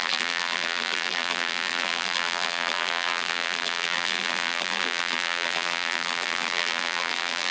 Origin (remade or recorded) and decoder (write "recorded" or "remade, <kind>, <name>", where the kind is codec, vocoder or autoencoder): remade, vocoder, BigVGAN v2